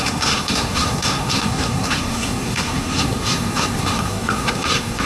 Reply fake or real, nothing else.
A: fake